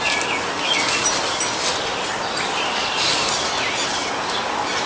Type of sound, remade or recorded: recorded